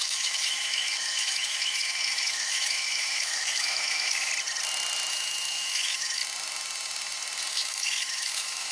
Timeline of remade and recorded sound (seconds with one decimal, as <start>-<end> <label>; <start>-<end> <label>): 0.0-4.3 remade; 4.3-5.1 recorded; 5.1-6.2 remade; 6.2-7.5 recorded; 7.5-8.7 remade